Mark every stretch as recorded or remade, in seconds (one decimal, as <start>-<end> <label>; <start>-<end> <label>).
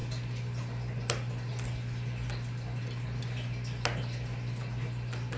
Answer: 0.0-5.4 recorded